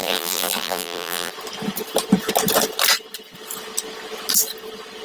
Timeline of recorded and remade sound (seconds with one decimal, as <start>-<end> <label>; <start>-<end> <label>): 0.0-1.3 remade; 1.3-5.0 recorded

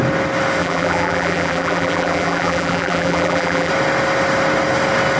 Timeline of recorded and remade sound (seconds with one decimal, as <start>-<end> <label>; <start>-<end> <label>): 0.0-0.6 recorded; 0.6-3.7 remade; 3.7-5.2 recorded

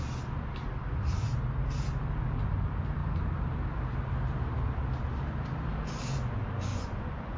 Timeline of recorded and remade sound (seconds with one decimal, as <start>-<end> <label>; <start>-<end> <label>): 0.0-6.7 recorded; 6.7-7.4 remade

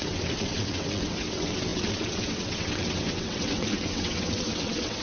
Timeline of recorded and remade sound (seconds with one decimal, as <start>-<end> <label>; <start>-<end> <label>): 0.0-5.0 remade

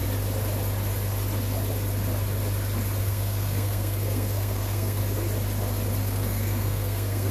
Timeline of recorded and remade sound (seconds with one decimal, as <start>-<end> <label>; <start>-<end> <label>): 0.0-3.0 recorded; 3.0-5.0 remade; 5.0-6.0 recorded; 6.0-7.3 remade

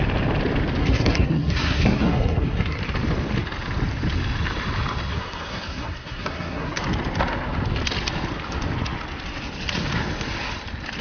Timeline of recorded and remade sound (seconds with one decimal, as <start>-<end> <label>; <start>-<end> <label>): 0.0-0.8 recorded; 0.8-2.8 remade; 2.8-5.1 recorded; 5.1-6.8 remade; 6.8-11.0 recorded

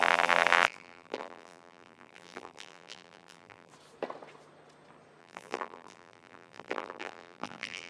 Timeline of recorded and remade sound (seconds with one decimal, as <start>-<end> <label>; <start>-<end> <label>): 0.0-3.7 remade; 3.7-5.2 recorded; 5.2-7.9 remade

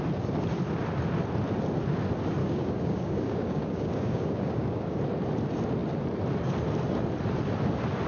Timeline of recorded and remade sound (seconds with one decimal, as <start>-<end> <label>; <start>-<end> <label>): 0.0-2.4 recorded; 2.4-5.0 remade; 5.0-8.1 recorded